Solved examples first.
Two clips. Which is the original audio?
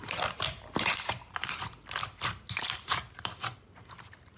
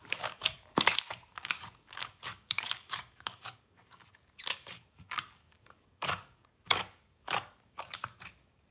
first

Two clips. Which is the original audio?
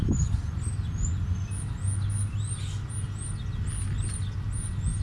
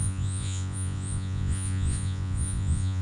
first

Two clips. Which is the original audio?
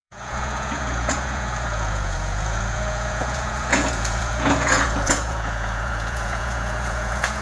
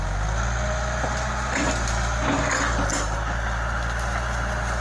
second